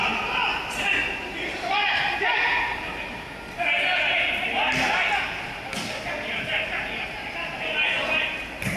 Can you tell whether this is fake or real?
real